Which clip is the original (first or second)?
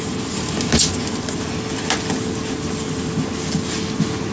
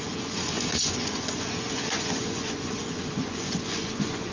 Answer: first